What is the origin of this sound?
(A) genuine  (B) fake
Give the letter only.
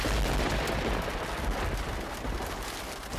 A